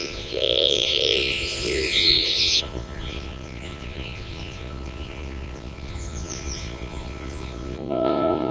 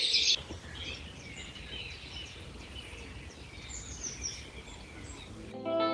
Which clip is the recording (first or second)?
second